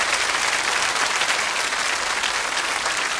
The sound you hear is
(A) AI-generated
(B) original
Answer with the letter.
B